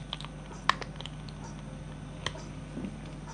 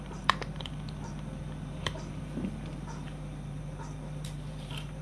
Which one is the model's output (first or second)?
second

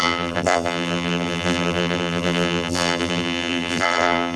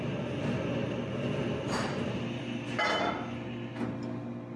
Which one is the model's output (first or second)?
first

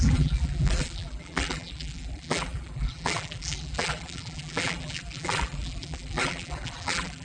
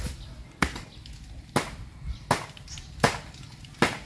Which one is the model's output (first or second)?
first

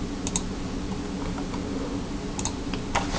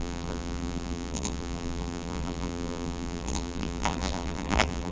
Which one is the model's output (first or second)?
second